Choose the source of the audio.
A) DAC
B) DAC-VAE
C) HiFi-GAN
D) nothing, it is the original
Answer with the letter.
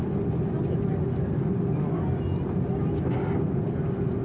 D